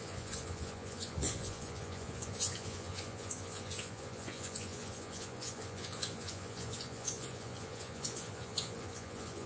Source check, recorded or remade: remade